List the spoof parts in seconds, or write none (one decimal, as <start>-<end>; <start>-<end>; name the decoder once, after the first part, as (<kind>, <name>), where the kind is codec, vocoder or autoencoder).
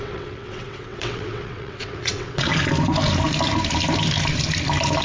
0.0-2.5 (vocoder, WaveNeXt)